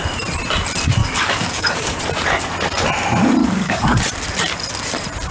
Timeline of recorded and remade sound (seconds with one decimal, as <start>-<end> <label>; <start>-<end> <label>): 0.0-1.0 recorded; 1.0-2.0 remade; 2.0-3.4 recorded; 3.4-4.0 remade; 4.0-5.3 recorded